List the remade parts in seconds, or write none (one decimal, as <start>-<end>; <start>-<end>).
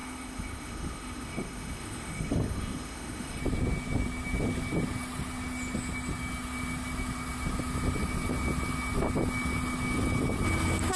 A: 0.0-3.4